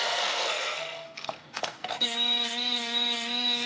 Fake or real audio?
fake